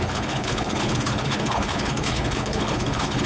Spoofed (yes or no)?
yes